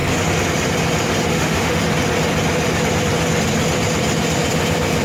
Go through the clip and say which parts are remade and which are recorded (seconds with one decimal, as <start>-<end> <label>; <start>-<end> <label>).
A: 0.0-1.3 recorded; 1.3-1.8 remade; 1.8-5.0 recorded